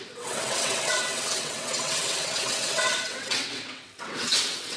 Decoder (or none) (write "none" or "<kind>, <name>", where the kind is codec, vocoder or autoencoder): vocoder, WaveNeXt